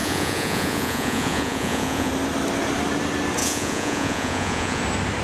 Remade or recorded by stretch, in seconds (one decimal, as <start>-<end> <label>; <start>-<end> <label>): 0.0-2.1 remade; 2.1-3.4 recorded; 3.4-4.8 remade; 4.8-5.2 recorded